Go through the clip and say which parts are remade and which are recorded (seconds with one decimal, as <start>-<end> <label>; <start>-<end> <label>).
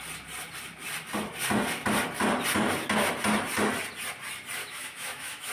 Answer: 0.0-4.6 recorded; 4.6-5.5 remade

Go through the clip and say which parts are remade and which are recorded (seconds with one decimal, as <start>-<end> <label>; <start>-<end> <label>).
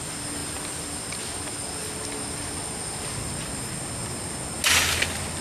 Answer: 0.0-5.4 recorded